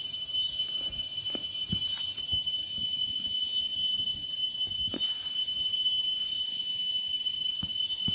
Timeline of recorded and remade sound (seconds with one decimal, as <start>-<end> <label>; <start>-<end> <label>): 0.0-2.7 recorded; 2.7-3.6 remade; 3.6-6.5 recorded; 6.5-7.1 remade; 7.1-8.1 recorded